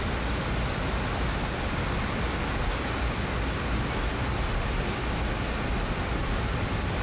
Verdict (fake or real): real